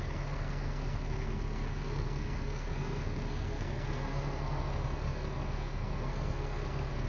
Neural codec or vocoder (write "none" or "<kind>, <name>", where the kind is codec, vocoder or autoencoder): codec, SNAC